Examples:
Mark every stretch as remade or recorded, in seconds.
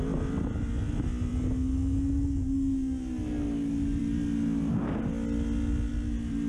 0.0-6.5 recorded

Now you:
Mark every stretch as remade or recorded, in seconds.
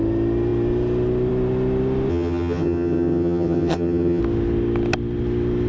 0.0-2.1 recorded; 2.1-4.2 remade; 4.2-5.7 recorded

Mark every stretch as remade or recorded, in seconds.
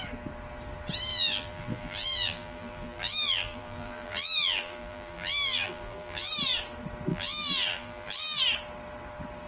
0.0-1.1 recorded; 1.1-6.3 remade; 6.3-7.1 recorded; 7.1-8.4 remade; 8.4-9.5 recorded